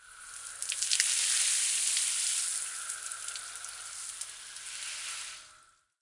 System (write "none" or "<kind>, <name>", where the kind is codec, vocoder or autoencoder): none